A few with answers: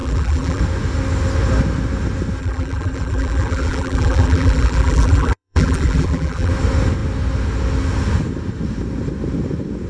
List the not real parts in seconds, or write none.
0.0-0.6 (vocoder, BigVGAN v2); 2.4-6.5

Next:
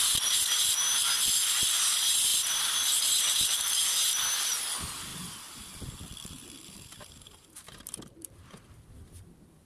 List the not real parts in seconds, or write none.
2.3-3.7 (vocoder, BigVGAN v2); 5.1-9.1

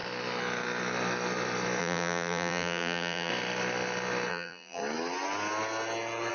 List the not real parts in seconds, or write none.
1.8-3.3 (vocoder, BigVGAN v2); 4.3-4.8

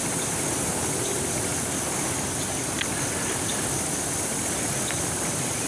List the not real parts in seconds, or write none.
1.0-1.5 (vocoder, BigVGAN v2); 4.9-5.7